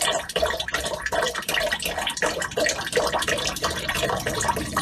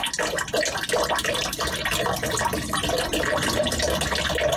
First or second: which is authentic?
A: second